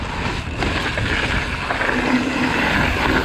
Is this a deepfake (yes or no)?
no